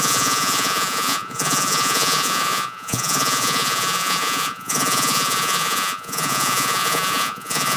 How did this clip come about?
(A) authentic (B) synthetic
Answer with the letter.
B